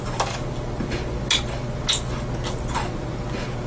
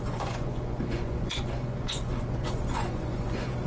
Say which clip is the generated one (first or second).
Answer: second